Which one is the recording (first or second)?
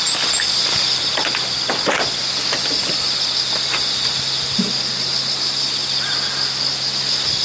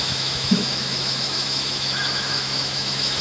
first